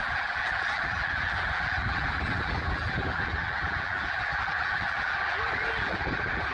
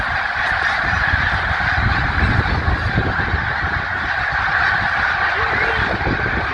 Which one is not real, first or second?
first